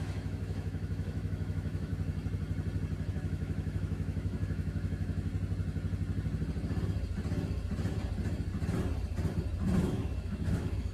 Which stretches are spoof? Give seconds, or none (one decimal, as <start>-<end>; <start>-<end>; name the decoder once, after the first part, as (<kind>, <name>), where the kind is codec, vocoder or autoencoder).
0.0-1.9 (autoencoder, DAC-VAE); 3.1-5.3; 9.8-10.9